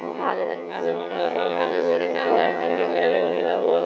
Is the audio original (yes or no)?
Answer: no